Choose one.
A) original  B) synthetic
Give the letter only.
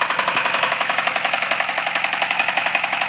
B